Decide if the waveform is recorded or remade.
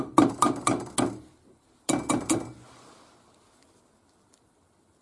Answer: recorded